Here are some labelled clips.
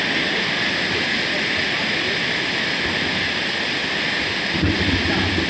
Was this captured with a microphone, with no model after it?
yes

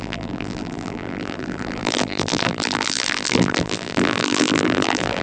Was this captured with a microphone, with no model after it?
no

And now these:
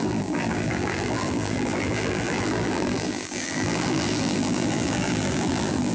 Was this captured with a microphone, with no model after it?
no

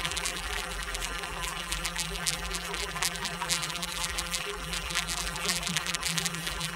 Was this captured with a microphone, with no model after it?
no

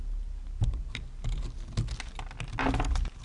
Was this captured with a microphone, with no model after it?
yes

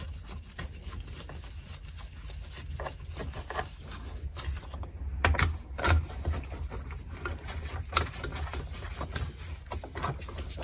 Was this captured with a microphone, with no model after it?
yes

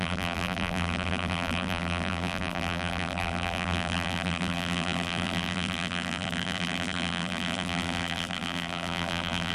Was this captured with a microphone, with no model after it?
no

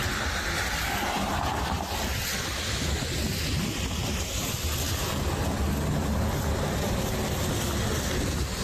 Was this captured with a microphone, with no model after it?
yes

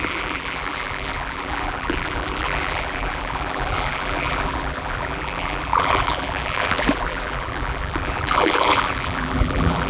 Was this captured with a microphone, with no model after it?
no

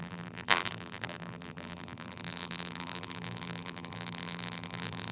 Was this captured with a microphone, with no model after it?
no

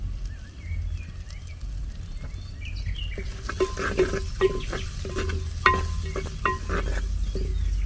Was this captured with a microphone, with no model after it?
yes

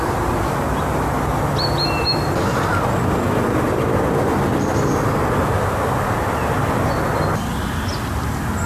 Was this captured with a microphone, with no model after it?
yes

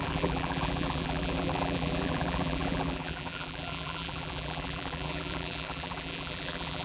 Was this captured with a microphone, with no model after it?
no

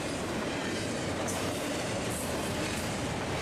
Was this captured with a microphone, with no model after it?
no